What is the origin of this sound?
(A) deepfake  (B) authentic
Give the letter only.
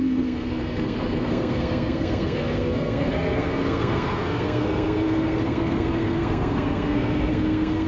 A